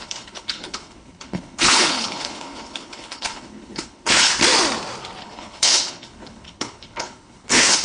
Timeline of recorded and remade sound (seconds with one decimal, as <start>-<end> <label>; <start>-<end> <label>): 0.0-4.3 remade; 4.3-5.2 recorded; 5.2-7.8 remade